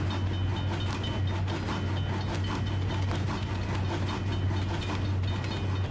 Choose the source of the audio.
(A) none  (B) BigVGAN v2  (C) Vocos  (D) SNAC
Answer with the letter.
A